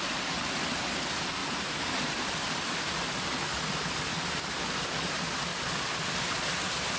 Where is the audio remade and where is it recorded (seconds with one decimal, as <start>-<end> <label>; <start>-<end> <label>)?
0.0-1.4 recorded; 1.4-2.5 remade; 2.5-4.1 recorded; 4.1-4.6 remade; 4.6-5.5 recorded; 5.5-6.0 remade; 6.0-7.0 recorded